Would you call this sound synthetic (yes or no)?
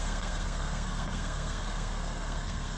yes